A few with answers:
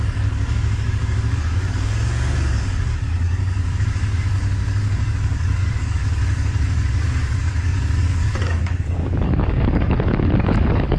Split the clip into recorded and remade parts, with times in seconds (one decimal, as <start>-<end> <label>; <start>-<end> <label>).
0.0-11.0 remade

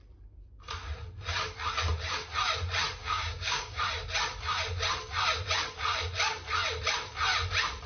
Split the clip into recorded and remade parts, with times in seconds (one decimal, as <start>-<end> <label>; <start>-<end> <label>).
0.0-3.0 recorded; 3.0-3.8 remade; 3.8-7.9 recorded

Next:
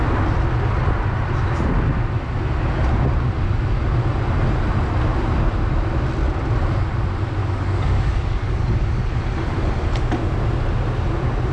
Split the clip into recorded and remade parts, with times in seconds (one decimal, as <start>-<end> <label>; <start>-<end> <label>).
0.0-7.4 recorded; 7.4-9.2 remade; 9.2-11.5 recorded

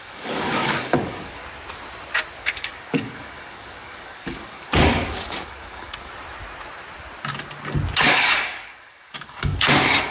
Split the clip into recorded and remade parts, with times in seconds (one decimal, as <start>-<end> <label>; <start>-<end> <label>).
0.0-1.4 remade; 1.4-2.3 recorded; 2.3-6.1 remade; 6.1-8.0 recorded; 8.0-10.1 remade

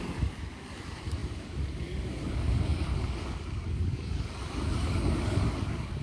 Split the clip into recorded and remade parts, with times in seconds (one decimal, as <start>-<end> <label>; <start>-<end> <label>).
0.0-6.0 remade

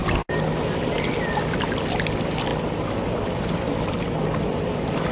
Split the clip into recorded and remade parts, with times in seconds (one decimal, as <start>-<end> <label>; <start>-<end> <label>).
0.0-5.1 recorded

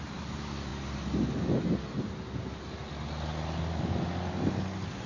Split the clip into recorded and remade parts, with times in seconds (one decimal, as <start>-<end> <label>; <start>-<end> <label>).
0.0-5.1 recorded

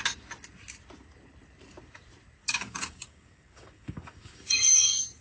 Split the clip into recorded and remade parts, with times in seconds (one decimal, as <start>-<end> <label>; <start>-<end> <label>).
0.0-2.4 recorded; 2.4-5.2 remade